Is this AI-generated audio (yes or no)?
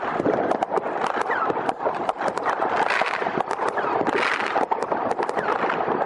no